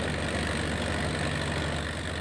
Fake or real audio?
real